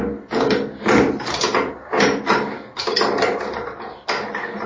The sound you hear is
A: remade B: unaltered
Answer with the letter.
B